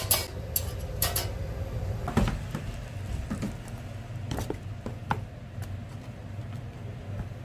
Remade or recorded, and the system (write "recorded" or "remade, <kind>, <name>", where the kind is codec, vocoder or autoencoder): recorded